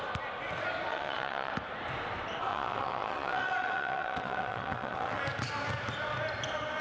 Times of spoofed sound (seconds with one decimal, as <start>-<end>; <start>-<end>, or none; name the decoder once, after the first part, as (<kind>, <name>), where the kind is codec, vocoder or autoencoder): 0.9-1.5 (vocoder, WaveNeXt); 2.5-5.2